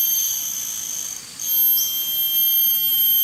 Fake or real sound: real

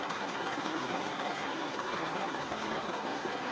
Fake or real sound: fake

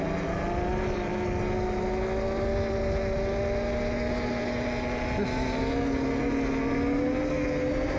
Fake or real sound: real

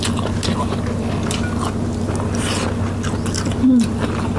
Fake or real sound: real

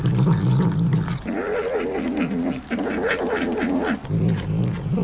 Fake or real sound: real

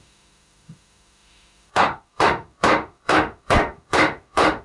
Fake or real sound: fake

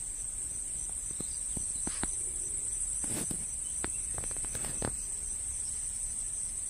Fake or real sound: real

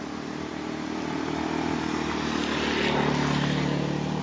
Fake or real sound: real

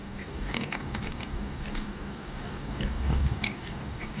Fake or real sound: fake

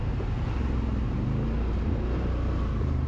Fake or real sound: real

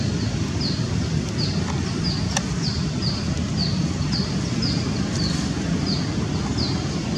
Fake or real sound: fake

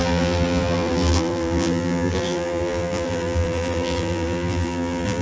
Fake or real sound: fake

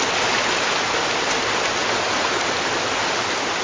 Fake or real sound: real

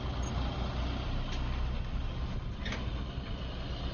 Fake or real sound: real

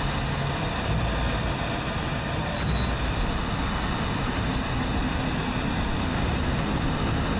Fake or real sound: real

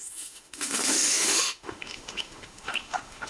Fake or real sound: fake